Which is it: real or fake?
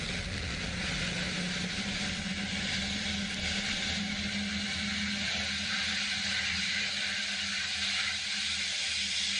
real